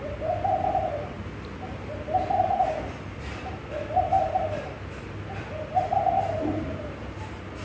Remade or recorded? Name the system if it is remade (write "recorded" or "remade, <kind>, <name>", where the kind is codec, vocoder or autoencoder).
recorded